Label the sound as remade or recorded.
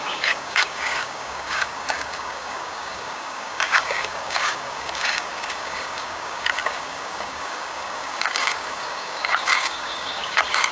remade